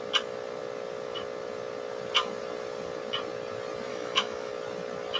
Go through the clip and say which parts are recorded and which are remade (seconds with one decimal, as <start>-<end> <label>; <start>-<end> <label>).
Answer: 0.0-3.9 recorded; 3.9-4.5 remade; 4.5-5.2 recorded

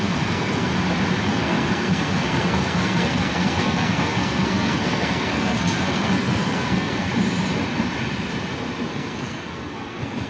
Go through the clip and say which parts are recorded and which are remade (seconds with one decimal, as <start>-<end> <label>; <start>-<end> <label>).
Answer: 0.0-0.7 remade; 0.7-1.2 recorded; 1.2-7.1 remade; 7.1-8.9 recorded; 8.9-10.3 remade

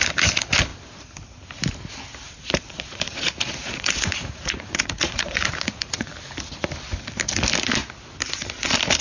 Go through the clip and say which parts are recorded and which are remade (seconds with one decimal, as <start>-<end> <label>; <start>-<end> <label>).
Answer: 0.0-2.3 recorded; 2.3-6.1 remade; 6.1-9.0 recorded

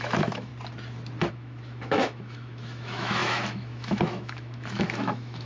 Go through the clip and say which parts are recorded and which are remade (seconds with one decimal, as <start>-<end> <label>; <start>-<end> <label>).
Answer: 0.0-0.5 remade; 0.5-1.3 recorded; 1.3-5.5 remade

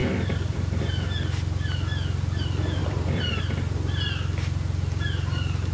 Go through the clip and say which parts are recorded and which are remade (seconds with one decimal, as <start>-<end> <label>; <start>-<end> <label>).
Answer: 0.0-0.8 remade; 0.8-2.8 recorded; 2.8-3.4 remade; 3.4-5.7 recorded

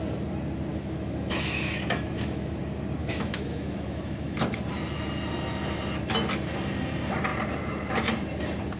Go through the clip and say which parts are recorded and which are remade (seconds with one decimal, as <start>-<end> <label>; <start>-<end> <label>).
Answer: 0.0-0.7 recorded; 0.7-2.6 remade; 2.6-3.0 recorded; 3.0-4.6 remade; 4.6-8.8 recorded

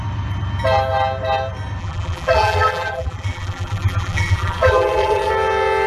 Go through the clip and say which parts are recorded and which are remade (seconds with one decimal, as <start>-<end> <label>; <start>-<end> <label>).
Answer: 0.0-1.8 recorded; 1.8-5.3 remade; 5.3-5.9 recorded

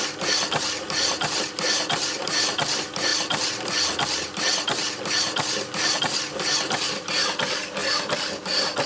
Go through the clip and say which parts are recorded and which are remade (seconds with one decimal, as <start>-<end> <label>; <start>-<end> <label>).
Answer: 0.0-8.9 recorded